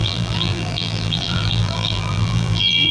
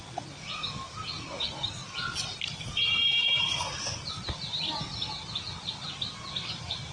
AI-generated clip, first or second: first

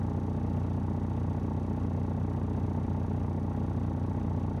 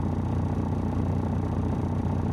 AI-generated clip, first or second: second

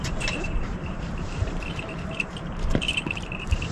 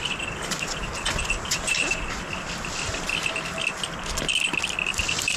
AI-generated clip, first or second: first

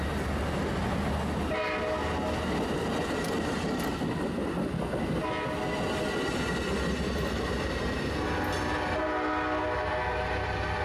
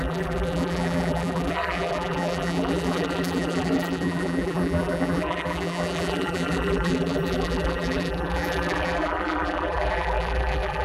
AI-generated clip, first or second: second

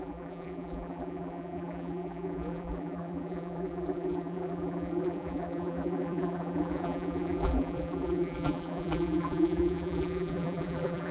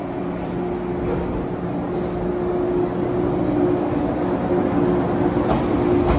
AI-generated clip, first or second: first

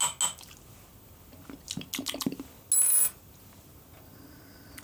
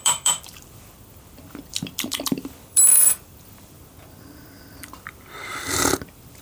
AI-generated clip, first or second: second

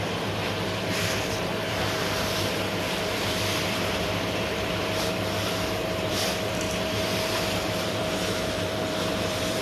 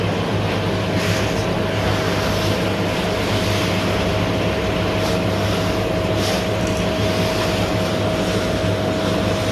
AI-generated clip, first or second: first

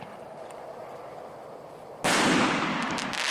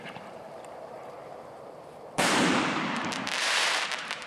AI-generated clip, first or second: second